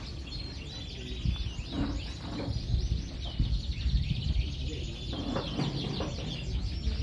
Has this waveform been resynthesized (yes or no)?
no